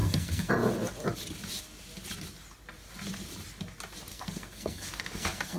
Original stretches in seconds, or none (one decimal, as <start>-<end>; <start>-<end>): 0.5-4.1